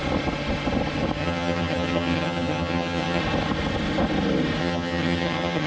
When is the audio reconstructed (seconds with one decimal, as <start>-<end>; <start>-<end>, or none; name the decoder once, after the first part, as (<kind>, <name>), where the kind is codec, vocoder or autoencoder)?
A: 1.2-3.2 (vocoder, HiFi-GAN); 4.6-5.7